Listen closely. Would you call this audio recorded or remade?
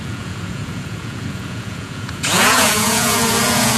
remade